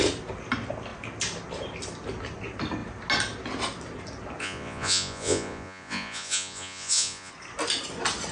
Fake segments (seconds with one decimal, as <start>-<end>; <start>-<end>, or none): 4.4-7.3